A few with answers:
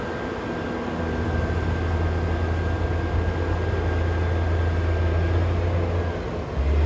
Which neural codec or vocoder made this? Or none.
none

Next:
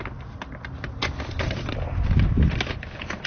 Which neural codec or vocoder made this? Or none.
none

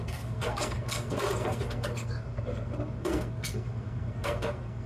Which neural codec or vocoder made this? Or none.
codec, SNAC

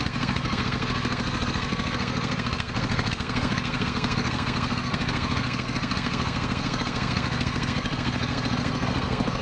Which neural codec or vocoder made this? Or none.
codec, SNAC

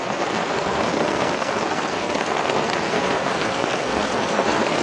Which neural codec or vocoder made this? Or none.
codec, SNAC